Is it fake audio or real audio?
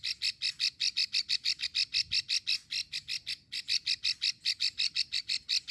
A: real